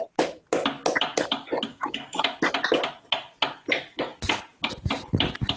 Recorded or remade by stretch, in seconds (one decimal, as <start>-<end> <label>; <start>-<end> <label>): 0.0-1.7 recorded; 1.7-2.2 remade; 2.2-5.6 recorded